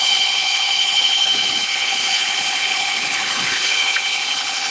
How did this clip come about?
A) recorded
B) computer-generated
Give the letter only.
B